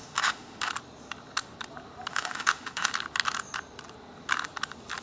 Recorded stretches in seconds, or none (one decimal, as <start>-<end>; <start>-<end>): 0.7-2.1; 2.9-5.0